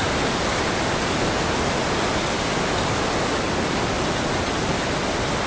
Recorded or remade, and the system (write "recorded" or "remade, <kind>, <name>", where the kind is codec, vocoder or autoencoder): recorded